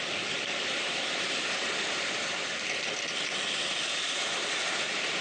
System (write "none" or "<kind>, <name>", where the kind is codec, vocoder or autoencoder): vocoder, BigVGAN v2